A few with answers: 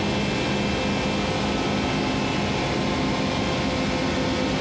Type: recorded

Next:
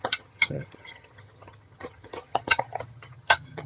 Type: remade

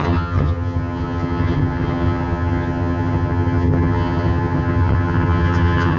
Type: remade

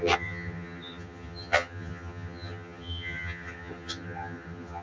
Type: remade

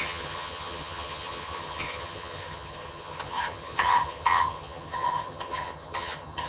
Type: remade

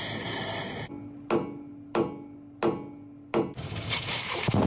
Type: recorded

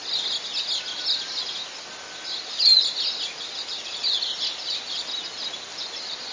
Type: recorded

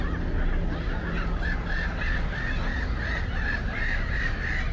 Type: recorded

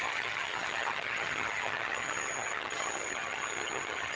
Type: remade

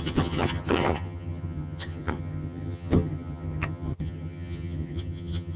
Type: remade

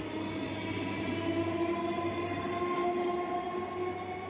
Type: recorded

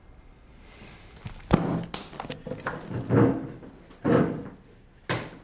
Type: recorded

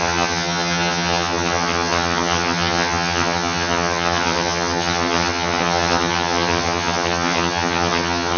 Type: remade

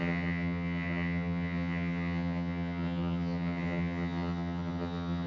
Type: remade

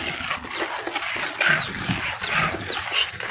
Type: recorded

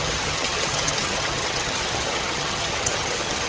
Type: remade